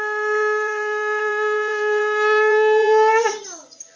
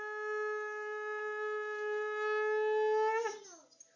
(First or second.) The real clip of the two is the second